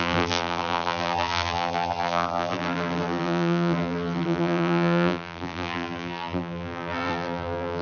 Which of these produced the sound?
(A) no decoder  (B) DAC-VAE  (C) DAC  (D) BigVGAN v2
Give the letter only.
D